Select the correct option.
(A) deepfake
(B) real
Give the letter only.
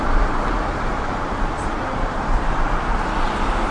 A